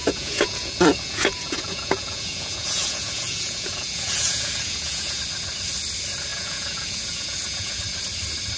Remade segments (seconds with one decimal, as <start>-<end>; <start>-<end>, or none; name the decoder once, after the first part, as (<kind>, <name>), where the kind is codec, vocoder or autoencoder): 0.0-5.2 (vocoder, Vocos); 6.3-7.8